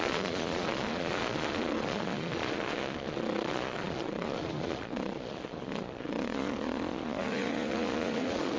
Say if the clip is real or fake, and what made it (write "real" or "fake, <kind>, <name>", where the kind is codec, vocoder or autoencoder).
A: fake, vocoder, Vocos